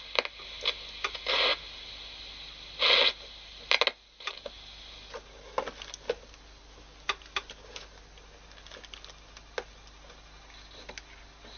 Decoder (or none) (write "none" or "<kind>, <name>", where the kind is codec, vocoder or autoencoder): none